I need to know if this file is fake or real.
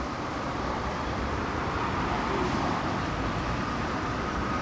fake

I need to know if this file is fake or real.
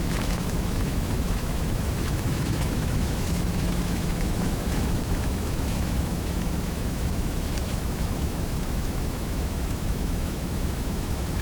fake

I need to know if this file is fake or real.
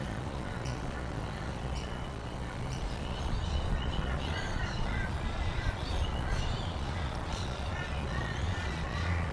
fake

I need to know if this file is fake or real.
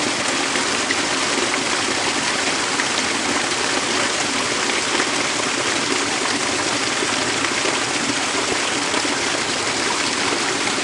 real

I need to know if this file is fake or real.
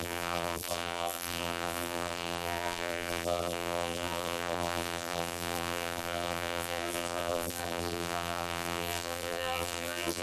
fake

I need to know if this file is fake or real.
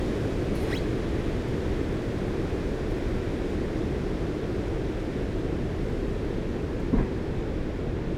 real